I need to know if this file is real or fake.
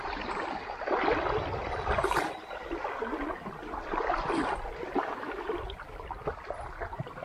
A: real